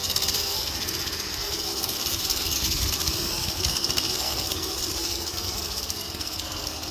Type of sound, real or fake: fake